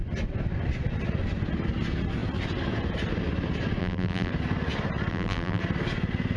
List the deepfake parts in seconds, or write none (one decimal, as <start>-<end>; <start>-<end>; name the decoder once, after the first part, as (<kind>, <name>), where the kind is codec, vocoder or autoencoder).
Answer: 3.8-4.3 (vocoder, BigVGAN v2); 5.1-5.6